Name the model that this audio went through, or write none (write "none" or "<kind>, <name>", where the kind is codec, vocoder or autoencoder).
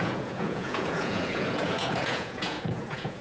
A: vocoder, Vocos